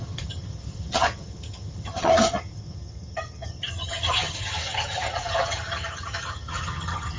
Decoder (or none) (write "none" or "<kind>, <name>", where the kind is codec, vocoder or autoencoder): vocoder, HiFi-GAN